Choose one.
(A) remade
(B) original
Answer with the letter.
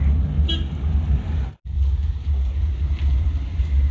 B